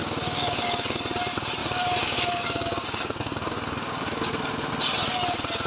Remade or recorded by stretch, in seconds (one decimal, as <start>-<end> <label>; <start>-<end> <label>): 0.0-1.0 remade; 1.0-1.6 recorded; 1.6-4.3 remade; 4.3-5.7 recorded